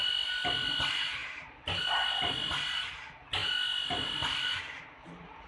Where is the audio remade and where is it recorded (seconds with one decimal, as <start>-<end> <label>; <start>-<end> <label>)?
0.0-5.5 recorded